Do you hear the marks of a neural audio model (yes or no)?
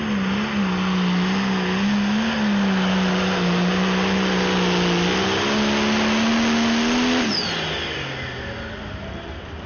no